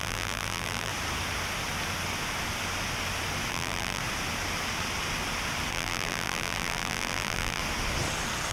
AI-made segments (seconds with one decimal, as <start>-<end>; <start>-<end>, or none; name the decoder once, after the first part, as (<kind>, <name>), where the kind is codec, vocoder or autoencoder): 0.0-0.9 (vocoder, BigVGAN v2); 3.5-4.0; 5.7-7.6